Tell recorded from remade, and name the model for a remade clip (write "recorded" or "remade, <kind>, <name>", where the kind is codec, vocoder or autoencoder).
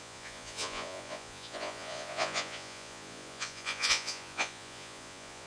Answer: remade, vocoder, Vocos